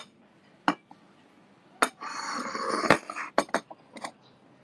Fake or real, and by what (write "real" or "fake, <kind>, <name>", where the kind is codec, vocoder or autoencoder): real